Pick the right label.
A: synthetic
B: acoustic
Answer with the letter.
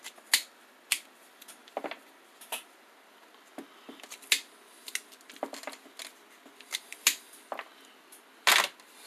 B